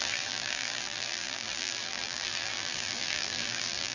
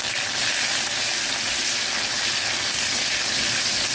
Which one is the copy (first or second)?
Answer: first